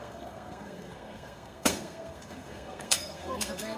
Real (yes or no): no